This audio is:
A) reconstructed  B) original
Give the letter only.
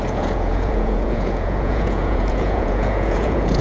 A